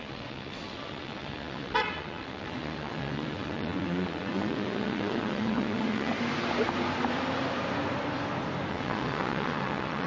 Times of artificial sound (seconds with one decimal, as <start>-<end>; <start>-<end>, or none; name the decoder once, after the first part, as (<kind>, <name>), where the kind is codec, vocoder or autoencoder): 0.0-6.1 (vocoder, WaveNeXt); 8.7-10.1